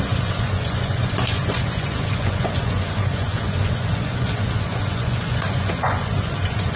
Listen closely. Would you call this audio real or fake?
fake